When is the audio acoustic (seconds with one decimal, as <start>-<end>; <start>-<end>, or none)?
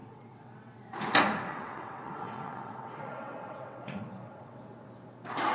0.8-1.5; 4.6-5.5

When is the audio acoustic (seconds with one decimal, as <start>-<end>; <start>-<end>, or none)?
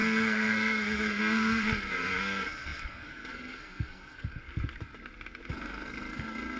4.4-5.5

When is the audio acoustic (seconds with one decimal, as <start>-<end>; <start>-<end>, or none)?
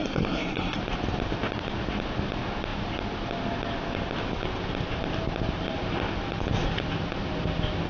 0.8-7.9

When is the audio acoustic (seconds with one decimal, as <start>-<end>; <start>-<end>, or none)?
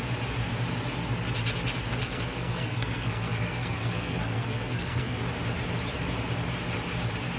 0.0-2.0; 5.2-7.4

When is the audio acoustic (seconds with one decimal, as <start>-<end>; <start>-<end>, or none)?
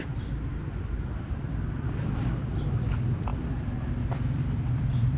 0.5-1.2; 3.3-4.0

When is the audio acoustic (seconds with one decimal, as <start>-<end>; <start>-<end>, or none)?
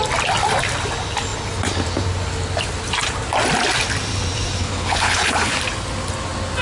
0.0-4.6; 5.6-6.6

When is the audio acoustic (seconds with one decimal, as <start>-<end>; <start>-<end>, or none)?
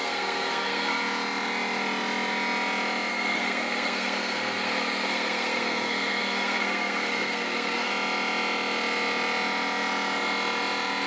1.0-3.1; 7.9-11.1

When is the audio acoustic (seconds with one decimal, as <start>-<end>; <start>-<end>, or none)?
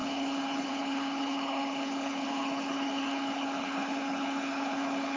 none